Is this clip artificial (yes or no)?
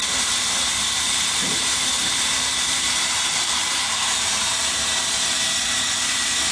yes